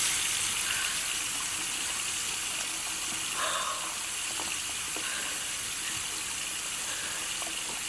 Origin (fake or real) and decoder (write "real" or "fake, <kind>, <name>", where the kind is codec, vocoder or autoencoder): real